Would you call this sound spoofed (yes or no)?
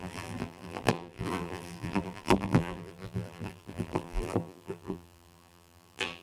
yes